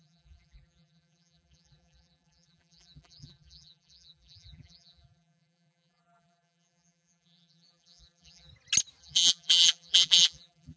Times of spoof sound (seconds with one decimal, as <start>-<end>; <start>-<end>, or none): 0.0-8.5; 9.0-10.8